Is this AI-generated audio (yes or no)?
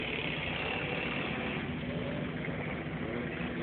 no